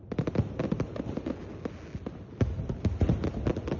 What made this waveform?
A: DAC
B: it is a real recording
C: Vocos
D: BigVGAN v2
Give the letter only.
B